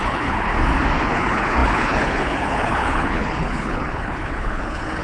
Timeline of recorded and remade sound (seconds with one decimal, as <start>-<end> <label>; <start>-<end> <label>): 0.0-0.5 remade; 0.5-1.0 recorded; 1.0-5.0 remade